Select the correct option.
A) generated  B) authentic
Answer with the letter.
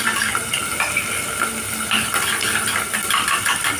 B